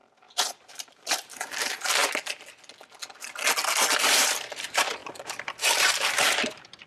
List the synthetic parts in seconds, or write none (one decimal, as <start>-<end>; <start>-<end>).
0.0-2.0; 4.0-5.0; 5.6-6.9